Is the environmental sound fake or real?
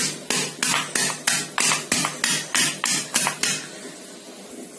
real